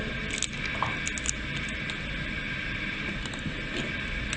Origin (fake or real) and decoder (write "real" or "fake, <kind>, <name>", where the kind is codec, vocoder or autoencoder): real